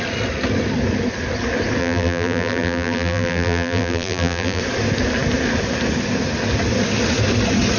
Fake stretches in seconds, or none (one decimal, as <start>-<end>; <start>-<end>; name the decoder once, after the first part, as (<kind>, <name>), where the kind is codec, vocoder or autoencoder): 1.8-4.6 (vocoder, BigVGAN v2)

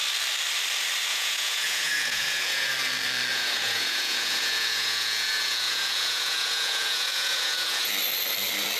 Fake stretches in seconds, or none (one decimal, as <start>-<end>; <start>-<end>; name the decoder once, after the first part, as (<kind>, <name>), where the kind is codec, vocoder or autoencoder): 1.1-2.7 (vocoder, Vocos); 3.3-7.9

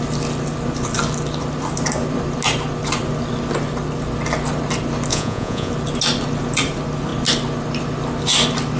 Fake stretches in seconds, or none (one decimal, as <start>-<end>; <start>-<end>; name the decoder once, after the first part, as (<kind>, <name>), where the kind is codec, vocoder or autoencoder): 5.1-5.7 (vocoder, Vocos)